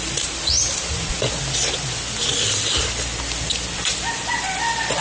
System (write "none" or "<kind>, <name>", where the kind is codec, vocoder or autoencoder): vocoder, BigVGAN v2